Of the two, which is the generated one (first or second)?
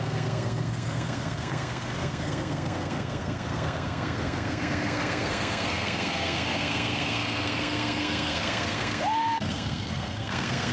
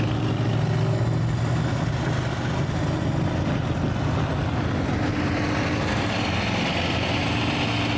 first